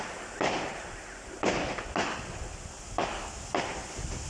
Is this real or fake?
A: real